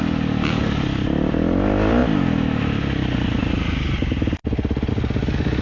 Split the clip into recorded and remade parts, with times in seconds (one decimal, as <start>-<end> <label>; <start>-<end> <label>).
0.0-5.6 recorded